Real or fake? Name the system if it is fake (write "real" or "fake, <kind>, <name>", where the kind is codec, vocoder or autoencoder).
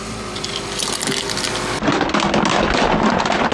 real